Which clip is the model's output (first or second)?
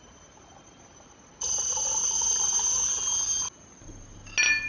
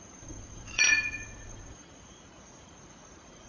second